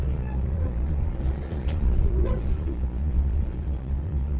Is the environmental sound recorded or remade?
remade